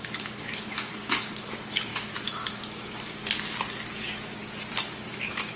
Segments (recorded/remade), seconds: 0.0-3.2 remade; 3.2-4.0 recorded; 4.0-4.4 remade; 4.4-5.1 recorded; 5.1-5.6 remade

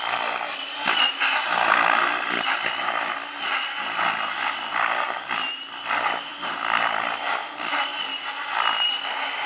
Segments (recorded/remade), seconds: 0.0-9.5 recorded

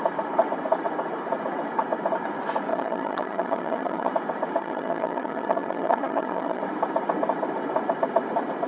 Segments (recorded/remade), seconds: 0.0-2.7 recorded; 2.7-4.1 remade; 4.1-4.6 recorded; 4.6-6.6 remade; 6.6-8.7 recorded

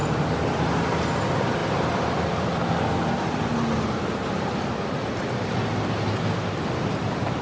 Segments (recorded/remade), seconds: 0.0-7.4 recorded

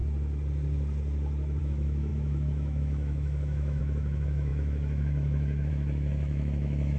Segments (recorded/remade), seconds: 0.0-1.6 recorded; 1.6-7.0 remade